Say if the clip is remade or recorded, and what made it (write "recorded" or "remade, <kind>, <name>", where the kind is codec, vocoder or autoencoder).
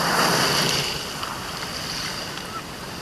recorded